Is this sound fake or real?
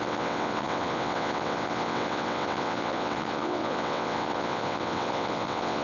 fake